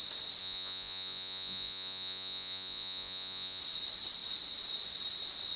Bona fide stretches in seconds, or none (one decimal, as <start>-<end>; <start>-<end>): 0.0-0.4; 3.6-5.6